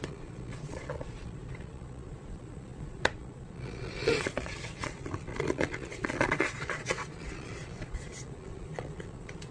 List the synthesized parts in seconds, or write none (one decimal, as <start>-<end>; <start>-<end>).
0.0-9.5